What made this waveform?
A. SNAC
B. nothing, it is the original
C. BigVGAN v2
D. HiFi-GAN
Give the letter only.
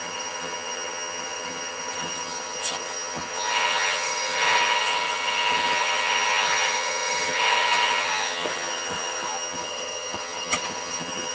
D